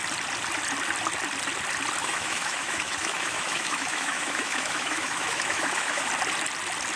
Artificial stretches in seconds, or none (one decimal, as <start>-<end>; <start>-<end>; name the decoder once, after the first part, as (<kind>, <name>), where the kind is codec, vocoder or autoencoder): 2.0-6.1 (autoencoder, DAC-VAE)